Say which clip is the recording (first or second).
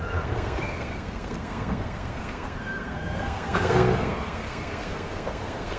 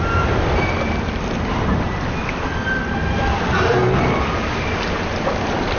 second